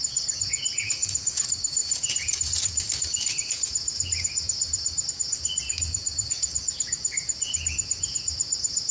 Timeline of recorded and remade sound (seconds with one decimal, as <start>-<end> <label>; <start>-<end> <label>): 0.0-8.9 remade